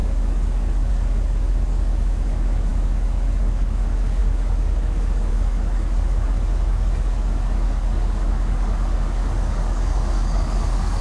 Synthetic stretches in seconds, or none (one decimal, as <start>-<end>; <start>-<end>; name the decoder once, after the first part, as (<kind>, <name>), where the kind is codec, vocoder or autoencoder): 0.0-11.0 (codec, DAC)